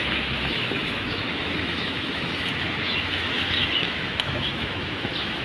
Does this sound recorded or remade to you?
remade